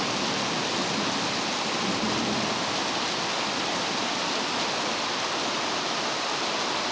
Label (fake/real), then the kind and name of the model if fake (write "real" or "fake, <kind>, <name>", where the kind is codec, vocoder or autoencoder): real